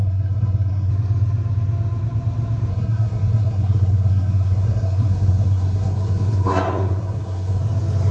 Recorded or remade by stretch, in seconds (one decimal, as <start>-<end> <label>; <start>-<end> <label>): 0.0-0.9 remade; 0.9-2.7 recorded; 2.7-7.6 remade; 7.6-8.1 recorded